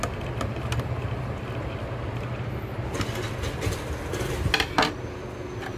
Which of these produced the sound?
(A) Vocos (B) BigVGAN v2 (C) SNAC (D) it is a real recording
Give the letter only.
D